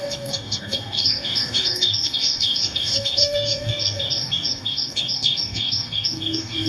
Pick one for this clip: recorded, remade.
remade